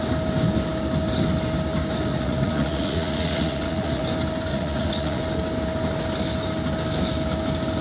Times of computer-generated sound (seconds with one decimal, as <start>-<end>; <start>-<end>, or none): 2.1-4.0; 4.5-5.2